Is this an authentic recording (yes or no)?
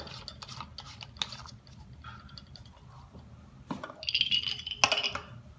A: yes